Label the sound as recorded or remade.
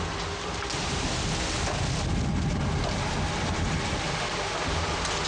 recorded